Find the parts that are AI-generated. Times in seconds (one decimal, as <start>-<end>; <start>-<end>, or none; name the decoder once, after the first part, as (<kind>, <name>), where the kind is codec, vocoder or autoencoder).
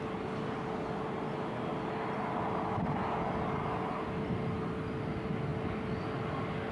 none